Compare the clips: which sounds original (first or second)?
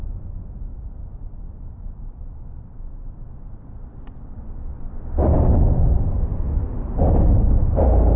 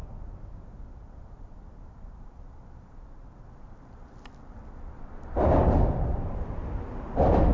first